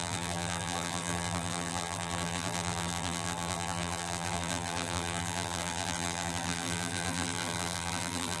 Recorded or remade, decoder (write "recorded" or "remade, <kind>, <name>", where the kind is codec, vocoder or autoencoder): remade, vocoder, BigVGAN v2